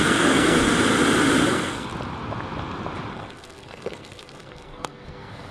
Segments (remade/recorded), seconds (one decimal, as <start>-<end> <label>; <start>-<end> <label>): 0.0-0.7 remade; 0.7-1.5 recorded; 1.5-1.9 remade; 1.9-3.1 recorded; 3.1-5.5 remade